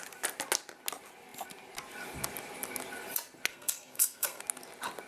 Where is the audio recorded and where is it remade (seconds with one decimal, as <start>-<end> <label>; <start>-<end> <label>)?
0.0-3.5 recorded; 3.5-4.4 remade; 4.4-5.1 recorded